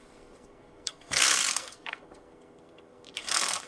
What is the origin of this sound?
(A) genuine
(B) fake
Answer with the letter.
B